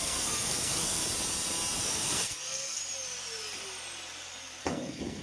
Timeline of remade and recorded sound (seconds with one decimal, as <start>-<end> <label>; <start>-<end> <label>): 0.0-1.0 remade; 1.0-1.8 recorded; 1.8-2.8 remade; 2.8-4.6 recorded; 4.6-5.2 remade

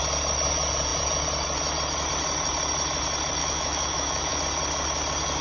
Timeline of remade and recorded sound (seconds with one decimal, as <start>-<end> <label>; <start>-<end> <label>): 0.0-3.4 recorded; 3.4-4.4 remade; 4.4-5.4 recorded